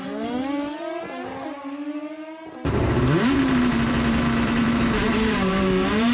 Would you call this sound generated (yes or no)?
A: yes